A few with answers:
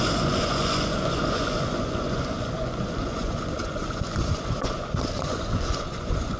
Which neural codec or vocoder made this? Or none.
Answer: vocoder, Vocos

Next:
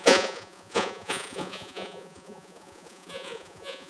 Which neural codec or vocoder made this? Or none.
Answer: vocoder, Vocos